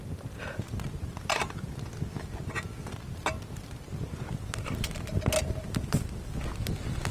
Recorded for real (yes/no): yes